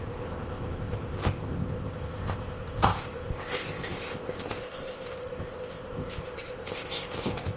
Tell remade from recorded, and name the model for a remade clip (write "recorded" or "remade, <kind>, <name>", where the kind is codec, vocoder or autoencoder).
remade, codec, ZipCodec